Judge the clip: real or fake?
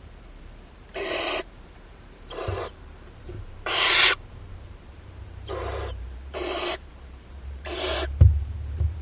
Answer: fake